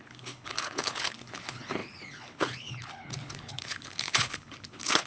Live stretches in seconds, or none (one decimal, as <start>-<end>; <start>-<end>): none